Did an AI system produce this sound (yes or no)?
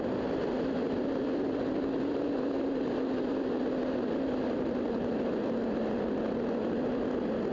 no